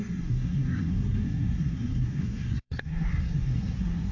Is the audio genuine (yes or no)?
no